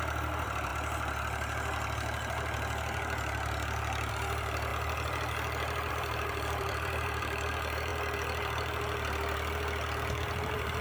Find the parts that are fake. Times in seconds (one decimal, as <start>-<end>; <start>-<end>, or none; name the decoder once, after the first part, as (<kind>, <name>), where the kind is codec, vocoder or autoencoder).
0.0-0.7 (vocoder, BigVGAN v2); 4.1-4.7; 5.9-7.9; 10.2-10.8